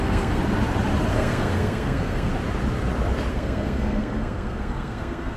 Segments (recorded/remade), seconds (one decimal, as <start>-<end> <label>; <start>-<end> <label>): 0.0-0.4 remade; 0.4-1.1 recorded; 1.1-2.3 remade; 2.3-3.3 recorded; 3.3-5.4 remade